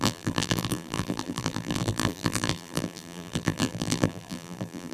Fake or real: fake